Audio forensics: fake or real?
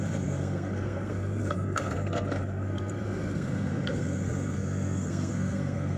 fake